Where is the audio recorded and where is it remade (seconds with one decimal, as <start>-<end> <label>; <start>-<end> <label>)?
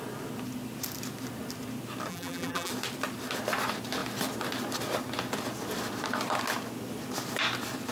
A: 0.0-2.1 recorded; 2.1-2.7 remade; 2.7-7.9 recorded